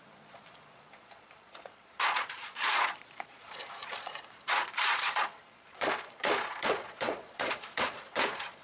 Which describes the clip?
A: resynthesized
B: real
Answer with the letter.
A